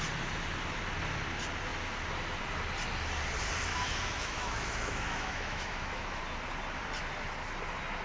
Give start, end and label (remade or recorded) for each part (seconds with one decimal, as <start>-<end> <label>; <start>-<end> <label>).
0.0-3.7 recorded; 3.7-6.2 remade; 6.2-8.0 recorded